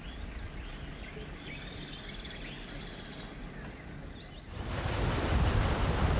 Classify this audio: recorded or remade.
recorded